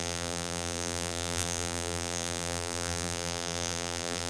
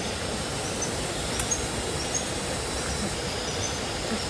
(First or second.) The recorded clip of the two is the second